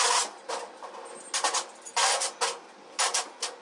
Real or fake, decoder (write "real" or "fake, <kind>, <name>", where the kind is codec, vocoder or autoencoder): real